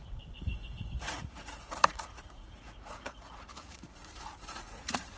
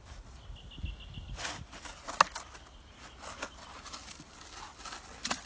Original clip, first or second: second